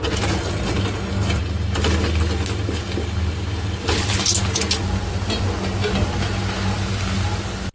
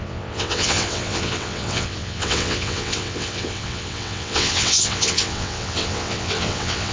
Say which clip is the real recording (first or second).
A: first